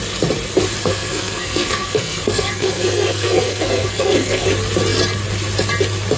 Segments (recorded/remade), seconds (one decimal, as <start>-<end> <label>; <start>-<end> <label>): 0.0-0.8 recorded; 0.8-4.5 remade; 4.5-6.2 recorded